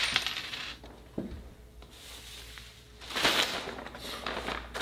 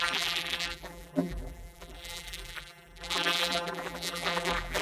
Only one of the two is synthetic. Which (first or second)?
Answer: second